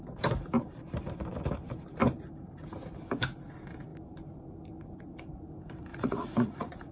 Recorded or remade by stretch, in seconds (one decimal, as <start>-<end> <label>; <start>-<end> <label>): 0.0-5.9 recorded; 5.9-6.9 remade